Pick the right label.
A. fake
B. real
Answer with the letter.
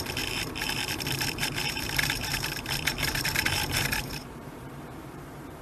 A